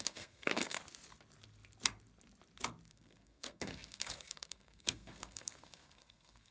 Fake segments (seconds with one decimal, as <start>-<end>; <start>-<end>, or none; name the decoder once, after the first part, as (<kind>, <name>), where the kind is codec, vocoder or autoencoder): 0.0-0.8 (codec, SNAC); 2.9-6.5

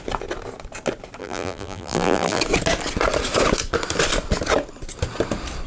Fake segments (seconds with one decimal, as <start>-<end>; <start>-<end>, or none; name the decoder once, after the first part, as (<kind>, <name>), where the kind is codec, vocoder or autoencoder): 1.2-2.4 (vocoder, BigVGAN v2)